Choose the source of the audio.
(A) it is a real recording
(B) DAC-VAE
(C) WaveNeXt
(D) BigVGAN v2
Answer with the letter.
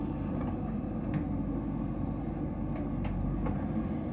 A